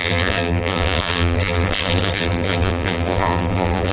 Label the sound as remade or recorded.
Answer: remade